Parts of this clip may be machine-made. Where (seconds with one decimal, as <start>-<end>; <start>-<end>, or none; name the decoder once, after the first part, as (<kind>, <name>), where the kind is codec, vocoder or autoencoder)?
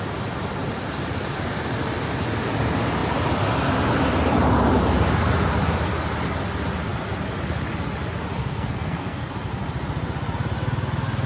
8.4-9.3 (codec, SNAC)